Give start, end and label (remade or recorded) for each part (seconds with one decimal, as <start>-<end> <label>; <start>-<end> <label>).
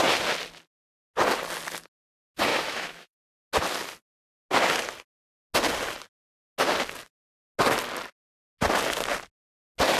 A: 0.0-2.5 recorded; 2.5-3.2 remade; 3.2-10.0 recorded